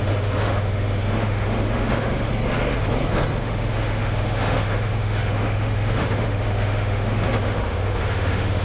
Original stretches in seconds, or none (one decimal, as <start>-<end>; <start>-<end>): 2.3-3.4